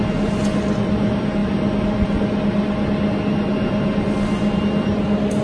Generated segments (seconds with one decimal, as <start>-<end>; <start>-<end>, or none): none